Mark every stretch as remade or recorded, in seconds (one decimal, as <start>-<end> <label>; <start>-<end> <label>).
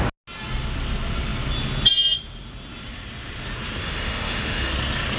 0.0-3.8 recorded; 3.8-4.7 remade; 4.7-5.2 recorded